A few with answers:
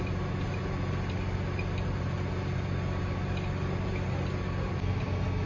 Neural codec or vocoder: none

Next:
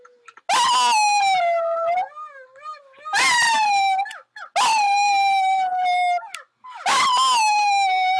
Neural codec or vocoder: none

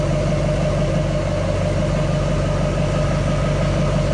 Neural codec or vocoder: none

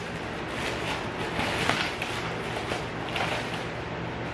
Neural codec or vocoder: none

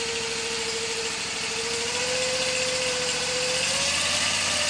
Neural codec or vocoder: none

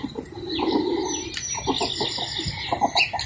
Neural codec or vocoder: none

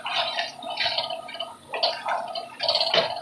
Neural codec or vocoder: none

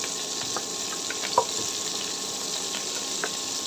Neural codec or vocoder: none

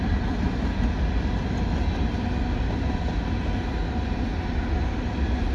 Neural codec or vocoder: none